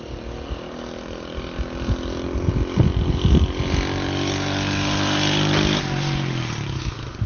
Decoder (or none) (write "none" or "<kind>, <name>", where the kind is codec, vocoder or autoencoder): none